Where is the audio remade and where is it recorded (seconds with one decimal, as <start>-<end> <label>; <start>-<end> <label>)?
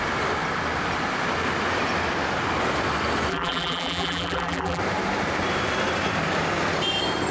0.0-3.3 recorded; 3.3-4.8 remade; 4.8-7.3 recorded